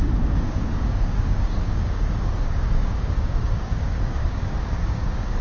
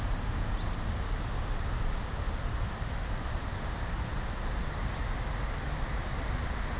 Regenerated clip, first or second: first